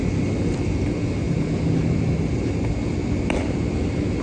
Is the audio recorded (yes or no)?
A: yes